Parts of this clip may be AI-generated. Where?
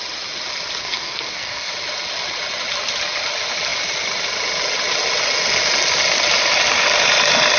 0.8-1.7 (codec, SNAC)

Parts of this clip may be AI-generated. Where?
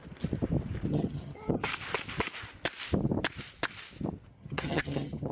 0.9-1.7 (vocoder, HiFi-GAN); 4.3-5.3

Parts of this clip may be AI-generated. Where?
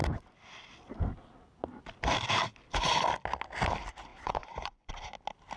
4.1-4.9 (vocoder, Vocos)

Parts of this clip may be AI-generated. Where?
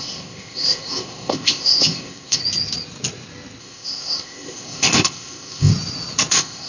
0.0-2.4 (codec, ZipCodec); 3.6-5.7; 6.3-6.7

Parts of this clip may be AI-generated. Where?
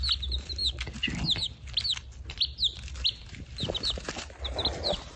none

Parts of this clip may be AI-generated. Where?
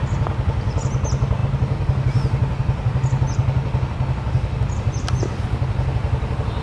none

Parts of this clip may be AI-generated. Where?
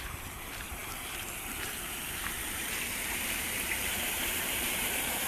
0.0-5.3 (vocoder, BigVGAN v2)